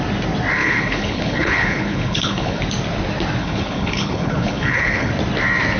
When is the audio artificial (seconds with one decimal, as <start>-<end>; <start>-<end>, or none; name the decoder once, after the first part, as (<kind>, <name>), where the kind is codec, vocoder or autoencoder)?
0.6-2.6 (codec, HILCodec); 3.4-5.1